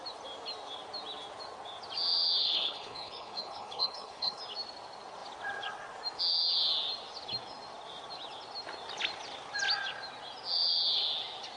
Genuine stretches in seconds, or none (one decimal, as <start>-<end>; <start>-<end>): 0.0-2.4; 4.4-11.6